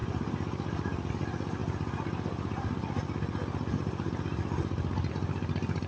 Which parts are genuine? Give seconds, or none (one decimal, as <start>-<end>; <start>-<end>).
0.0-5.9